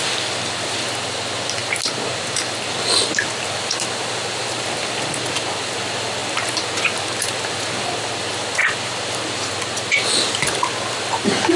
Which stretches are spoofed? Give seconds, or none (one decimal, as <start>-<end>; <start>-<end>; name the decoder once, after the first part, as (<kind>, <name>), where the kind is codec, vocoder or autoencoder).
none